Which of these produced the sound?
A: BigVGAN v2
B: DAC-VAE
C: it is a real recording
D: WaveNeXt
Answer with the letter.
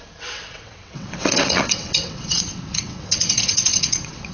D